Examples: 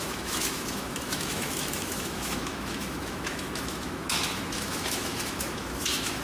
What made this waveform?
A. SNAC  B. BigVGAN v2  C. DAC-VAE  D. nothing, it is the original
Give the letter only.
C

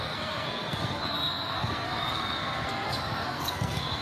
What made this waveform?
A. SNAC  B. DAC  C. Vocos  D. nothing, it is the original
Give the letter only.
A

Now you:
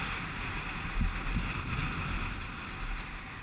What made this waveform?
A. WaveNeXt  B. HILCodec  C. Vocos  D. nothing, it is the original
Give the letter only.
D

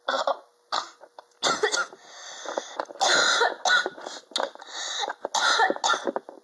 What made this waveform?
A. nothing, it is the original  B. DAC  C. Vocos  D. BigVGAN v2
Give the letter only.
A